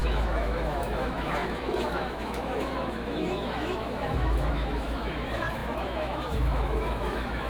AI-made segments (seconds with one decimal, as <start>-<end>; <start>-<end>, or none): 0.0-7.5